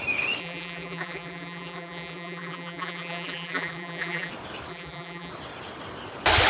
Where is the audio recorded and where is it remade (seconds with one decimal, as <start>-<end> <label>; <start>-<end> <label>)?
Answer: 0.0-0.4 recorded; 0.4-4.3 remade; 4.3-4.7 recorded; 4.7-5.3 remade; 5.3-6.5 recorded